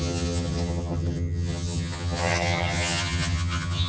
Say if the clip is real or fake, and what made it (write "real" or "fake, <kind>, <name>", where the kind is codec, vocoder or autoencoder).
fake, vocoder, HiFi-GAN